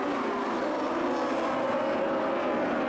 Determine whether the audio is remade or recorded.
recorded